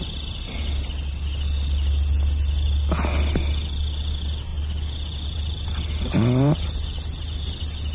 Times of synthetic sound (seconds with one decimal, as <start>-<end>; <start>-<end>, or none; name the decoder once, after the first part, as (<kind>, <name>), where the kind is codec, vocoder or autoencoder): none